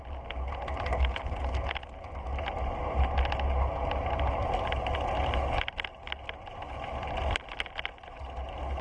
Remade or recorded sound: recorded